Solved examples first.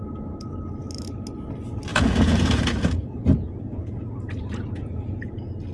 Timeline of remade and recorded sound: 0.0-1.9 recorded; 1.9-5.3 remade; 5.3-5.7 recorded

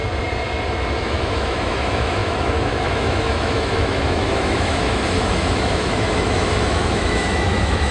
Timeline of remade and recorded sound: 0.0-1.0 recorded; 1.0-7.9 remade

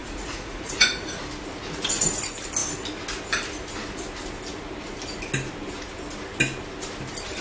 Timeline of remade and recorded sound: 0.0-1.2 remade; 1.2-7.4 recorded

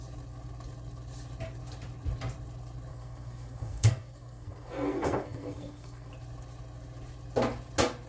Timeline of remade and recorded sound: 0.0-2.9 recorded; 2.9-6.1 remade; 6.1-8.1 recorded

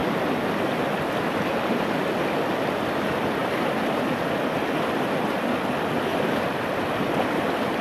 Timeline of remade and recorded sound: 0.0-7.8 recorded

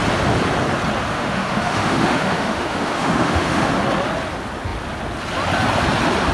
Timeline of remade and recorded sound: 0.0-1.1 recorded; 1.1-3.7 remade; 3.7-6.3 recorded

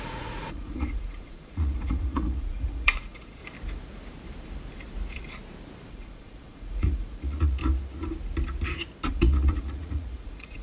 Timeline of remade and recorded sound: 0.0-3.4 remade; 3.4-5.9 recorded; 5.9-7.6 remade; 7.6-9.1 recorded; 9.1-10.6 remade